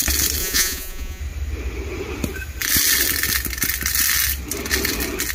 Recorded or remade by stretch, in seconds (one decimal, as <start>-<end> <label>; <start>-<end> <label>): 0.0-0.4 recorded; 0.4-1.2 remade; 1.2-5.3 recorded